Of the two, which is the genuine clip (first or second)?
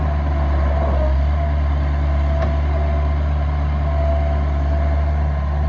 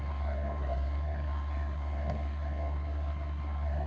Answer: first